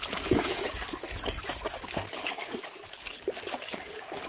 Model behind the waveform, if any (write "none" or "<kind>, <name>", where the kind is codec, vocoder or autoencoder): codec, DAC